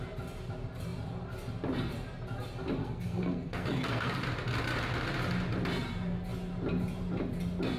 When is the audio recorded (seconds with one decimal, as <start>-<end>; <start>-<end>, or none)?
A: 0.0-2.8; 4.2-7.8